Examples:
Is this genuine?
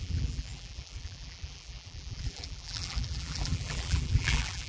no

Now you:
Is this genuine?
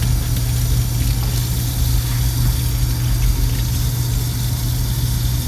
yes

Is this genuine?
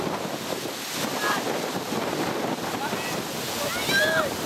yes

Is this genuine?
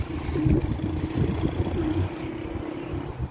yes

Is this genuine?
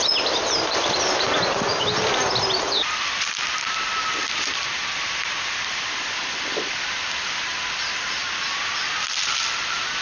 no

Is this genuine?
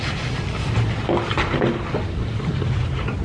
yes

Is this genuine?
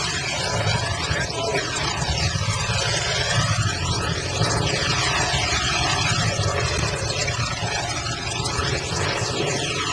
yes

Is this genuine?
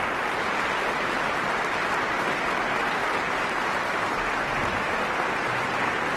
yes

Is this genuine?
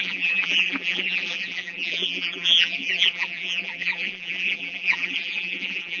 no